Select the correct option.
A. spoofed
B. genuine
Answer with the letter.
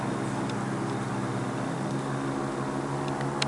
B